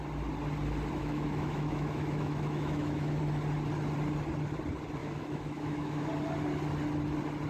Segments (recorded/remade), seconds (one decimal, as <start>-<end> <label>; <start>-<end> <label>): 0.0-1.0 recorded; 1.0-3.2 remade; 3.2-5.0 recorded; 5.0-6.1 remade; 6.1-7.5 recorded